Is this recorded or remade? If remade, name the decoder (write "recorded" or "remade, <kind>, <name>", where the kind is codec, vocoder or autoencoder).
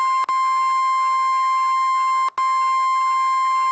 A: recorded